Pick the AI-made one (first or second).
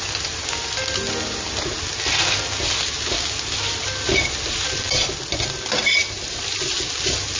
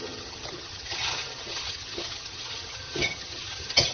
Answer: second